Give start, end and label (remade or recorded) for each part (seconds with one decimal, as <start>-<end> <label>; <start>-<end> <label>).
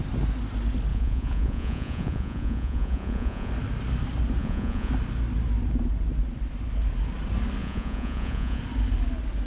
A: 0.0-0.9 recorded; 0.9-3.5 remade; 3.5-4.4 recorded; 4.4-4.9 remade; 4.9-7.6 recorded; 7.6-8.6 remade; 8.6-9.5 recorded